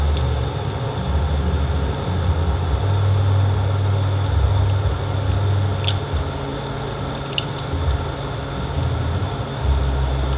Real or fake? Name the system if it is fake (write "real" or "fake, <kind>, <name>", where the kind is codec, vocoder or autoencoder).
real